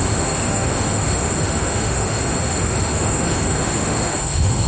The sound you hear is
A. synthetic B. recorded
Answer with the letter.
A